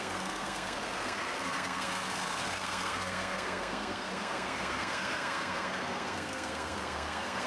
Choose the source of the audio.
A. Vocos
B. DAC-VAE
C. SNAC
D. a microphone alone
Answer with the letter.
C